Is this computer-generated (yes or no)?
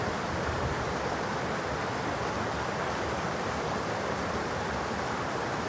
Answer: no